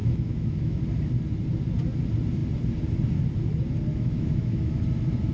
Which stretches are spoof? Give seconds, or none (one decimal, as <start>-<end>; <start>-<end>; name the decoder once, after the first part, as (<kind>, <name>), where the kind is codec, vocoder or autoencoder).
0.0-0.8 (autoencoder, DAC-VAE); 3.9-4.8